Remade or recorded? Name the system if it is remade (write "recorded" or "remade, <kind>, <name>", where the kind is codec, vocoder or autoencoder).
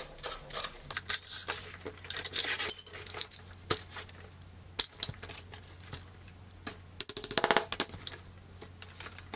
recorded